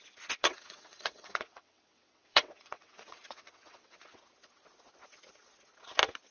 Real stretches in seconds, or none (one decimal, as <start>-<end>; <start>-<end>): 0.0-0.4; 4.2-6.3